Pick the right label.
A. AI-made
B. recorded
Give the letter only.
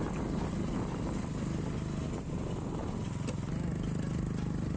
B